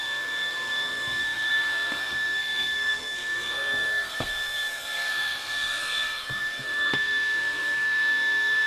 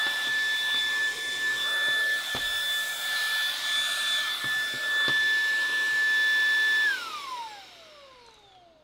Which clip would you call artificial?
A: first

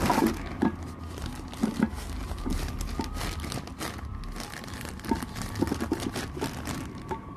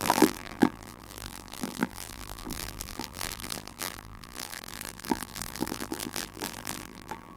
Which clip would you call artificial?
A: second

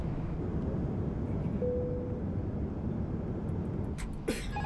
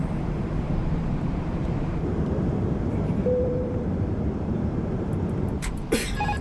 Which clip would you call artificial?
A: second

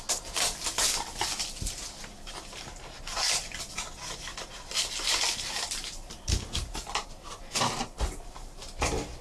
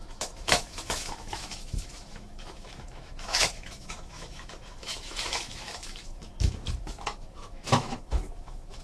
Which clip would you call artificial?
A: second